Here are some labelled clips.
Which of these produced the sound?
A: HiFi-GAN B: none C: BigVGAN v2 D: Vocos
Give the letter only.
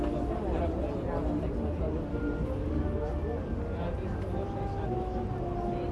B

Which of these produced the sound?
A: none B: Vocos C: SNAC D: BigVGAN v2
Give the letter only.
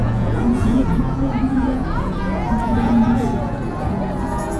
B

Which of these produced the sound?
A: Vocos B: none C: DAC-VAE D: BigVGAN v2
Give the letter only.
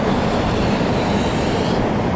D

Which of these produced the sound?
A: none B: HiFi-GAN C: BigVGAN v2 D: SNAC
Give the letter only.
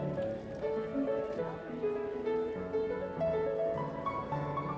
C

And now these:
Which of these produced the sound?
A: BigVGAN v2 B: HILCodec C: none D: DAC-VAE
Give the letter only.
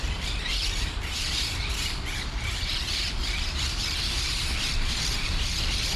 A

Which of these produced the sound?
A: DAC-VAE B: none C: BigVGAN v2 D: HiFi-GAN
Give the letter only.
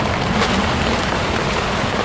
B